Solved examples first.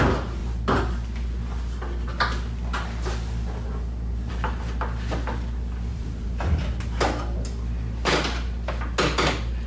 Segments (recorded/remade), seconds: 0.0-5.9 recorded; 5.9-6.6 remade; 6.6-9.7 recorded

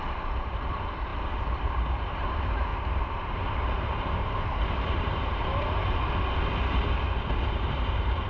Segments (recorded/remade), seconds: 0.0-2.7 remade; 2.7-3.3 recorded; 3.3-5.8 remade; 5.8-6.6 recorded; 6.6-8.3 remade

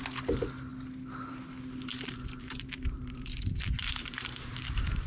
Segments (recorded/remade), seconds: 0.0-1.9 recorded; 1.9-5.1 remade